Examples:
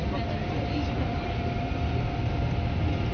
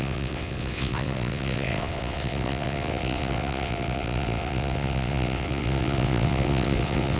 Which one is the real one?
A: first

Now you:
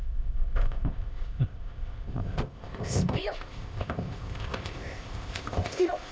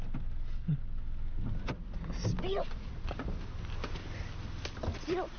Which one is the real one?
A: second